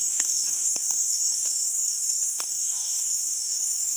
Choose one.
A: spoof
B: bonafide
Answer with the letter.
A